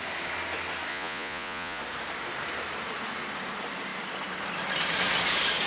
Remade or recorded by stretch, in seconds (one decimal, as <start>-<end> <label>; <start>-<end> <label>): 0.0-0.9 recorded; 0.9-1.8 remade; 1.8-5.7 recorded